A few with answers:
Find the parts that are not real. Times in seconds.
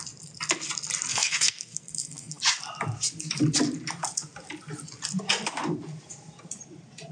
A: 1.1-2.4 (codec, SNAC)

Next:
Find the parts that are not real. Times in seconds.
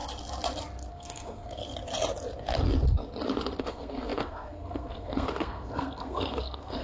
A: 0.9-1.6 (codec, SNAC); 3.6-6.8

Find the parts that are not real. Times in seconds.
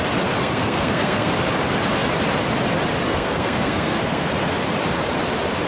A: 0.4-1.3 (codec, SNAC); 3.1-4.3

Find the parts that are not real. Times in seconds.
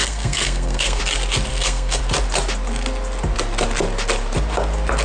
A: 0.0-1.0 (codec, SNAC); 1.5-2.0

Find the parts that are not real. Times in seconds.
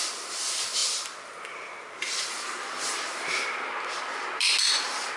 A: none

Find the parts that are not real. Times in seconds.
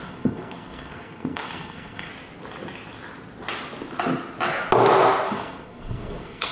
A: 0.0-2.1 (codec, SNAC); 5.3-6.5